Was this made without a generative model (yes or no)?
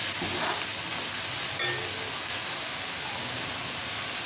yes